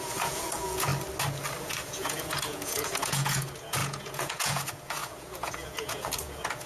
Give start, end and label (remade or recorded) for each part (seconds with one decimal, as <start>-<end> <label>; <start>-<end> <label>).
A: 0.0-0.9 remade; 0.9-1.6 recorded; 1.6-6.7 remade